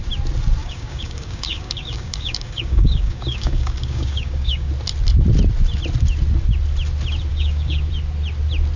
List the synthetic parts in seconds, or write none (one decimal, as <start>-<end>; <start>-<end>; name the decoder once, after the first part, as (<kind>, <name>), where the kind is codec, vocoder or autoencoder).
0.6-4.7 (codec, DAC); 7.3-7.9